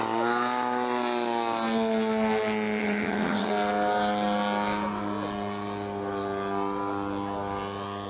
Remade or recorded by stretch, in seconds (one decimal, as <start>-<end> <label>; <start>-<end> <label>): 0.0-2.8 recorded; 2.8-3.5 remade; 3.5-8.1 recorded